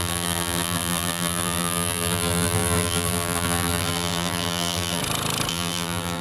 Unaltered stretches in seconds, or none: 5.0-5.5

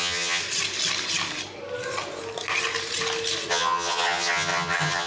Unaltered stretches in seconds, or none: 0.4-3.5

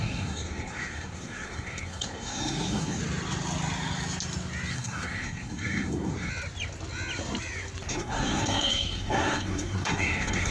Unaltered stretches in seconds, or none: 3.0-4.7; 6.3-7.9